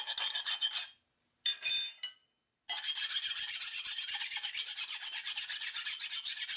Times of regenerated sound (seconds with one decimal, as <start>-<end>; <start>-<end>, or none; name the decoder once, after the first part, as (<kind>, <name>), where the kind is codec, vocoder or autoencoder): none